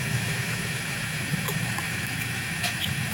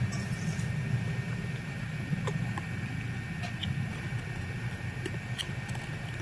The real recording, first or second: second